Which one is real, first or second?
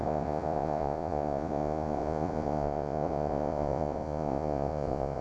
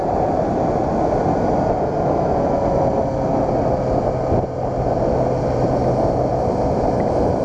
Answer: second